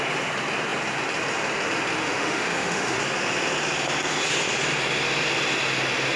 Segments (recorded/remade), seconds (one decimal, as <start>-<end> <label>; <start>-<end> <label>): 0.0-2.0 recorded; 2.0-3.0 remade; 3.0-6.2 recorded